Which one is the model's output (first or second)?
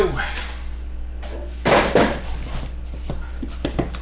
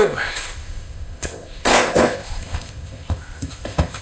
second